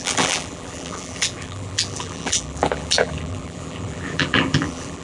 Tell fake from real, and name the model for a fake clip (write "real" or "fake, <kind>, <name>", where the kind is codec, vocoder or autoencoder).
fake, vocoder, BigVGAN v2